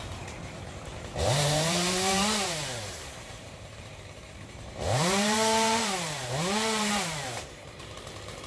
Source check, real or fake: fake